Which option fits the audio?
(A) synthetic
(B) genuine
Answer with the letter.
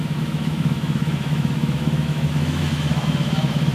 A